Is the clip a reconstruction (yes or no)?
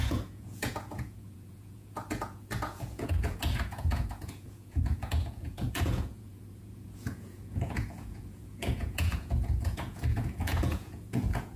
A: yes